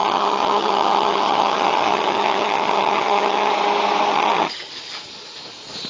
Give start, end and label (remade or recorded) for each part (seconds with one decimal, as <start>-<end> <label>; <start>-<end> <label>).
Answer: 0.0-3.5 remade; 3.5-4.1 recorded; 4.1-4.7 remade; 4.7-5.9 recorded